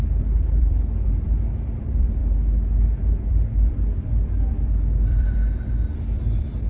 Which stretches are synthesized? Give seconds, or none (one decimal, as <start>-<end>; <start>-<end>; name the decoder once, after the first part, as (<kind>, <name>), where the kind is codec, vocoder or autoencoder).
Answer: 0.0-2.2 (vocoder, BigVGAN v2); 3.1-6.7